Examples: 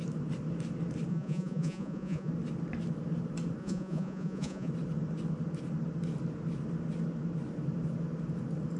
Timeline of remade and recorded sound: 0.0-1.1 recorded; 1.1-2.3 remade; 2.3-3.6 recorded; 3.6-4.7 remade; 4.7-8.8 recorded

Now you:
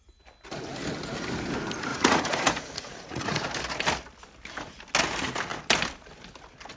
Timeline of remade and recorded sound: 0.0-1.9 recorded; 1.9-3.4 remade; 3.4-6.8 recorded

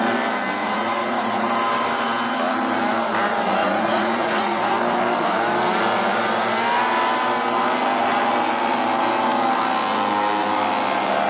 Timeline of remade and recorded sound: 0.0-0.6 recorded; 0.6-1.5 remade; 1.5-3.6 recorded; 3.6-4.7 remade; 4.7-11.3 recorded

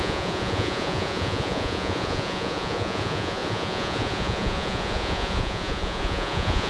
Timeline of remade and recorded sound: 0.0-6.7 remade

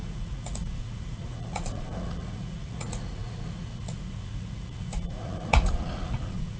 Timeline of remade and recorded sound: 0.0-6.6 remade

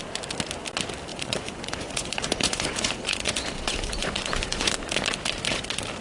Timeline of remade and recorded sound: 0.0-1.1 recorded; 1.1-4.7 remade; 4.7-6.0 recorded

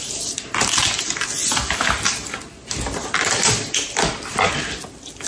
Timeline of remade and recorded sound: 0.0-5.3 recorded